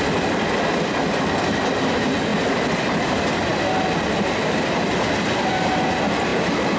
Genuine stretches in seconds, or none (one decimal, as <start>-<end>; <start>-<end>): 0.0-6.8